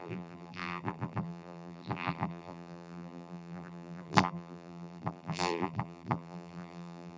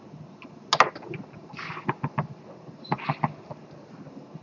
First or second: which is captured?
second